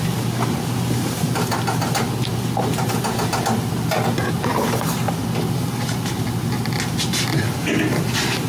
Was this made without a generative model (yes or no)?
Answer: yes